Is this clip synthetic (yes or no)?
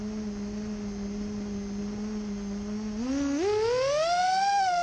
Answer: no